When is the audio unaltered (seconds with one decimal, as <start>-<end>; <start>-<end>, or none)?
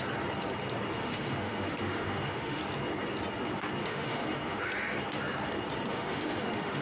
0.0-0.9; 2.6-3.8; 4.6-5.9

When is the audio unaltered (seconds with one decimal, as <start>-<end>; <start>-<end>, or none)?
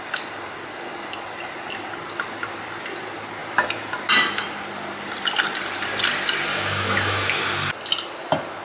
0.0-6.5; 7.4-8.6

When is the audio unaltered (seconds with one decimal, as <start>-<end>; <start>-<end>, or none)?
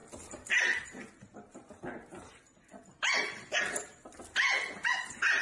0.0-5.4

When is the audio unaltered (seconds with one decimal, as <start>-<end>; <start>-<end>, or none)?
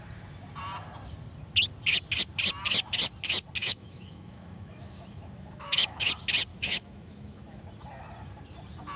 0.0-3.6; 6.1-6.5; 7.6-9.0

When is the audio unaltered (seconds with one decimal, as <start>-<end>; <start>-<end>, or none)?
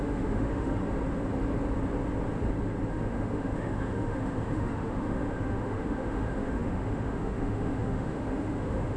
0.8-2.9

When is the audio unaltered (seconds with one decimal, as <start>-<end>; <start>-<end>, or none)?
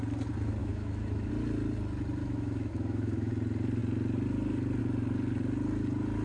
0.0-0.6; 1.3-2.2; 3.3-6.2